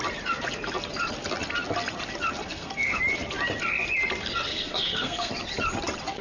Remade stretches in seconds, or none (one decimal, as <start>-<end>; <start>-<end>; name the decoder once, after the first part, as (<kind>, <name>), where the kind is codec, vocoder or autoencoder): 2.4-3.0 (codec, SNAC); 4.5-5.3